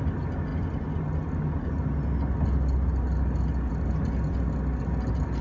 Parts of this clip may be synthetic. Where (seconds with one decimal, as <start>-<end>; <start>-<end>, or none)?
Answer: none